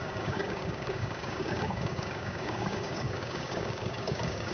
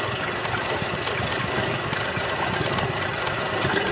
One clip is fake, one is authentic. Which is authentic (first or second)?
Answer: second